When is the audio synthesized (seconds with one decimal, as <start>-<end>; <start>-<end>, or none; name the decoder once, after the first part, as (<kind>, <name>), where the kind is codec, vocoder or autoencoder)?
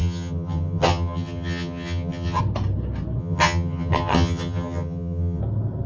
0.0-2.4 (vocoder, HiFi-GAN); 3.2-5.4